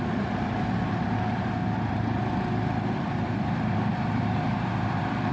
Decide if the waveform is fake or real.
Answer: fake